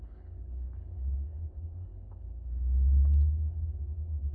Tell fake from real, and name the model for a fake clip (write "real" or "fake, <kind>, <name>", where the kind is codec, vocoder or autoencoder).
fake, codec, HILCodec